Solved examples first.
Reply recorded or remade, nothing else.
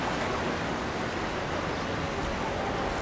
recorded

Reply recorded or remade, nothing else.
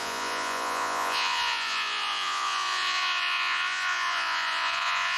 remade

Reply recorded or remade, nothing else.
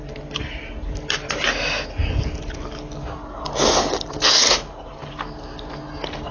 recorded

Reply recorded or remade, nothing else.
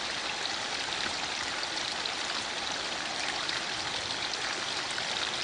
recorded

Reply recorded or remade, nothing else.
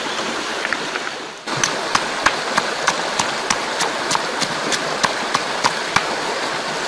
recorded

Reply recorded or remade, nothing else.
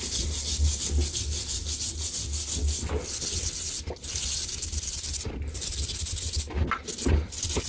recorded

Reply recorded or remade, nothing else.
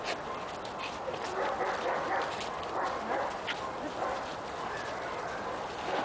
recorded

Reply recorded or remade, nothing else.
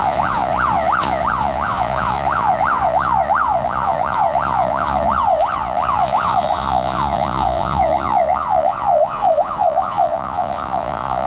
remade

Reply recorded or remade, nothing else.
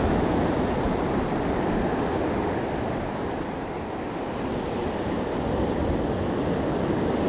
recorded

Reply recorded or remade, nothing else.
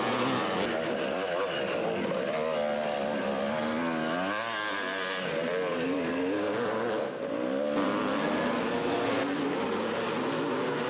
recorded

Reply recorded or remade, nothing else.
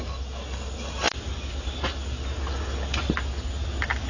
recorded